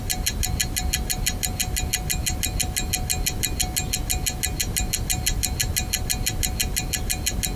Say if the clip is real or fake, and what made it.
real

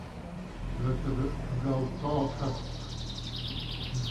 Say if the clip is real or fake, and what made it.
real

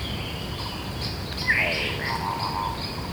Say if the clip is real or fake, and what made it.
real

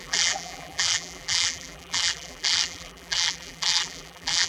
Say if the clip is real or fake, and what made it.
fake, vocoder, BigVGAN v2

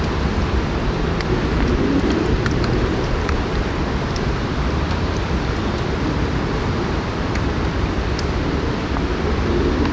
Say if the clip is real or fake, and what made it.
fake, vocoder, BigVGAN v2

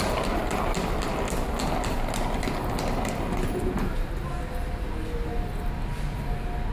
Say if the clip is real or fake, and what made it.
real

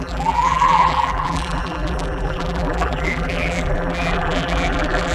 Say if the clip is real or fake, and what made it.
fake, vocoder, BigVGAN v2